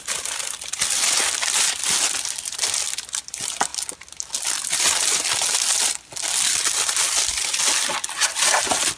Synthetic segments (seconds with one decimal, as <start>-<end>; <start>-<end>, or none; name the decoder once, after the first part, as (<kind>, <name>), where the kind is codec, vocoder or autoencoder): none